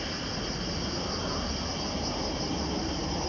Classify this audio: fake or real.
real